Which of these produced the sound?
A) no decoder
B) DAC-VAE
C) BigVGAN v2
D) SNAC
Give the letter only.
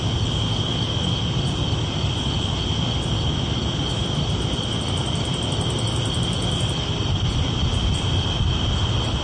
A